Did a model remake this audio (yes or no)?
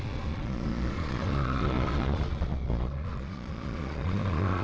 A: yes